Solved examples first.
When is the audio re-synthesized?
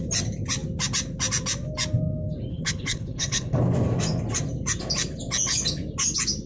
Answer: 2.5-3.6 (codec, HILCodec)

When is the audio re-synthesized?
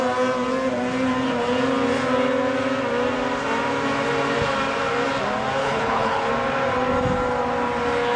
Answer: 5.6-6.3 (codec, HILCodec)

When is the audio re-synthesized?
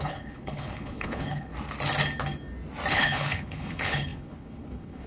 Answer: 0.0-1.5 (codec, HILCodec); 2.9-5.1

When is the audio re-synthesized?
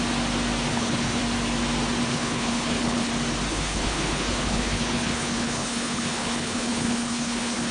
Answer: 0.7-1.2 (codec, HILCodec); 2.1-3.1; 3.5-7.7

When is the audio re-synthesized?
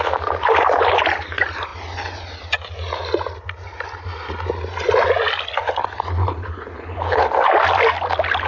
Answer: 6.2-7.2 (codec, HILCodec)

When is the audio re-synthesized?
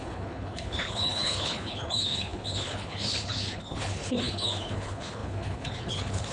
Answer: 0.0-6.3 (codec, HILCodec)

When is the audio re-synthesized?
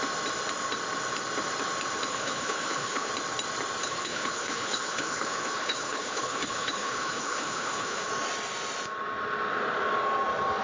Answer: 2.1-3.1 (codec, HILCodec); 3.8-8.1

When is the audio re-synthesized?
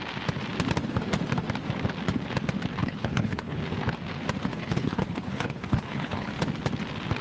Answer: 2.8-3.6 (codec, HILCodec); 4.5-6.3